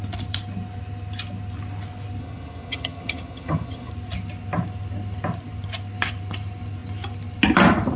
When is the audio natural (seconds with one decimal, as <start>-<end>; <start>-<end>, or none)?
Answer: 0.0-2.2; 3.9-8.0